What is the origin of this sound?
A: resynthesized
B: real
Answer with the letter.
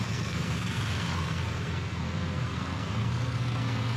A